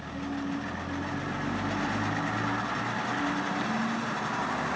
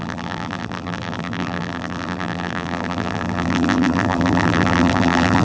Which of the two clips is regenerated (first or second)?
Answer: second